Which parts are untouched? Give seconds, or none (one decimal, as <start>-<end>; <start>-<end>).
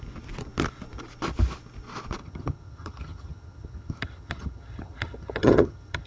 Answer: 0.0-2.2